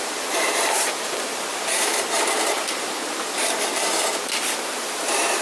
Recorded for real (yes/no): no